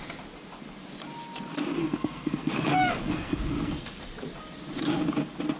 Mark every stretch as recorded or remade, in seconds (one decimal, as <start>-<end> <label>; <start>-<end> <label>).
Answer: 0.0-1.8 recorded; 1.8-4.0 remade; 4.0-5.6 recorded